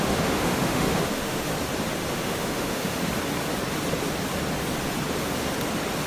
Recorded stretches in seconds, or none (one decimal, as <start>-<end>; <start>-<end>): 1.5-2.1; 3.0-6.1